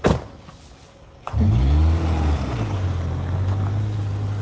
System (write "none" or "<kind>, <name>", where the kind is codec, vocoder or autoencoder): none